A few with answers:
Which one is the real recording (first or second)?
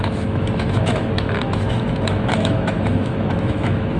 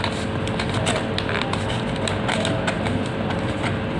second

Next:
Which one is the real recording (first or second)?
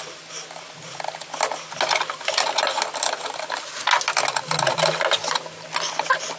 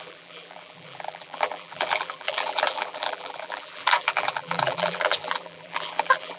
first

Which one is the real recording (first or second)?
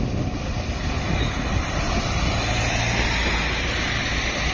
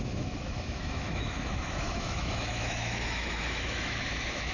first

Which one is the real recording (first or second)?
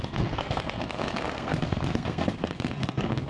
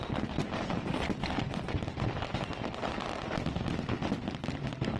second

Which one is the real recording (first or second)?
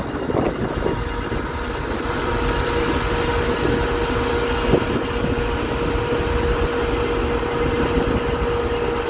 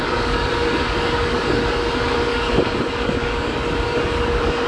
first